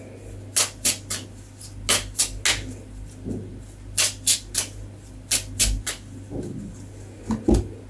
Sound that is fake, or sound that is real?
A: real